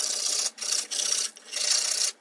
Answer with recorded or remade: recorded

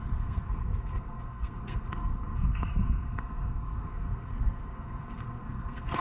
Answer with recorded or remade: remade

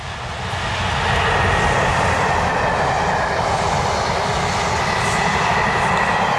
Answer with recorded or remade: recorded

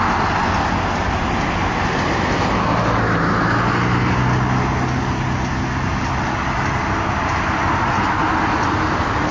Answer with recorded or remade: recorded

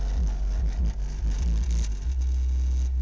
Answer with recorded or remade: recorded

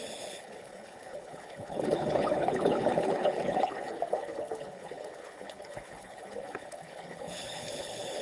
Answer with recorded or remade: remade